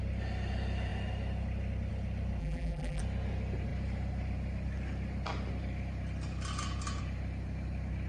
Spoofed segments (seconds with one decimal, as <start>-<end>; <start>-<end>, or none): 2.4-3.0